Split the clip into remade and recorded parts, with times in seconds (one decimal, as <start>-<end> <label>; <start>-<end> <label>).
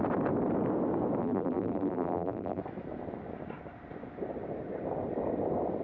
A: 0.0-1.2 recorded; 1.2-2.6 remade; 2.6-5.8 recorded